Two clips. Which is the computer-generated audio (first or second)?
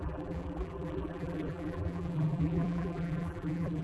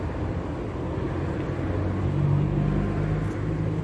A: first